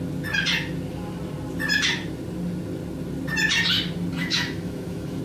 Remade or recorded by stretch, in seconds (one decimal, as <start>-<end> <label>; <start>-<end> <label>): 0.0-4.2 recorded; 4.2-5.2 remade